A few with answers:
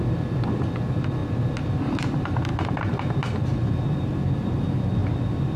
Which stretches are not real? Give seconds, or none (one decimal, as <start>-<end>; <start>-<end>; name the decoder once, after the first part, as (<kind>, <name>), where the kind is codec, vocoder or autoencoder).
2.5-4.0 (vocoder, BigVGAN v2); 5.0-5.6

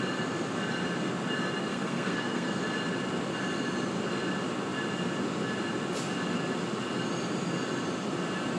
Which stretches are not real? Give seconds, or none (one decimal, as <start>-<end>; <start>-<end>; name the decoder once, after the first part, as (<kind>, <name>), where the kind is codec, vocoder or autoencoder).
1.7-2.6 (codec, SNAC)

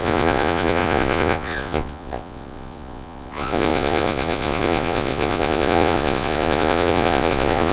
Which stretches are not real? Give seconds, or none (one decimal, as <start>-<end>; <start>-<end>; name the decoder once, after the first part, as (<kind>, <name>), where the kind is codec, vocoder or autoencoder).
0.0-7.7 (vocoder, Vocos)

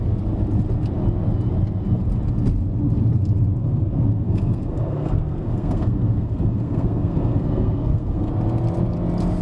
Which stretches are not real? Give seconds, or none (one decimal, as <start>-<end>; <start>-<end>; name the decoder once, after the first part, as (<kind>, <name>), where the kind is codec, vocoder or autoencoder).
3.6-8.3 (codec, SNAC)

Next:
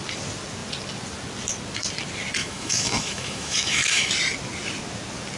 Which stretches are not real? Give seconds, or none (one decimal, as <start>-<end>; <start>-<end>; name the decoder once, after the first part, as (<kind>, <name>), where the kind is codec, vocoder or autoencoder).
2.4-4.1 (autoencoder, DAC-VAE)

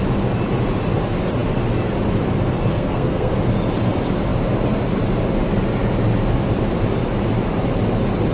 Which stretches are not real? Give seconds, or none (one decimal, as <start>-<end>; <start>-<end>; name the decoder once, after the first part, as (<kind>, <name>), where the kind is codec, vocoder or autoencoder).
2.7-3.3 (codec, SNAC)

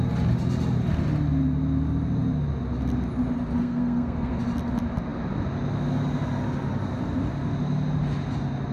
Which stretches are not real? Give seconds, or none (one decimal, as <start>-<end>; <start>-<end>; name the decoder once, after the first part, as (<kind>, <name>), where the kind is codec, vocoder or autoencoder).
3.6-4.4 (codec, SNAC)

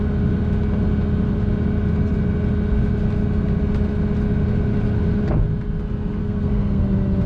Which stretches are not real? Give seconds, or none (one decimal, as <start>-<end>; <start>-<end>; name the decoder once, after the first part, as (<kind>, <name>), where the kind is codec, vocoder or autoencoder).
6.2-6.8 (codec, SNAC)